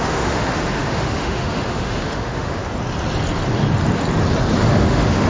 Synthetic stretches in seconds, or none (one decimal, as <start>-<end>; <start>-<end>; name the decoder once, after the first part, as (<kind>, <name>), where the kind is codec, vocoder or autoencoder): 0.0-2.6 (autoencoder, DAC-VAE); 4.6-5.3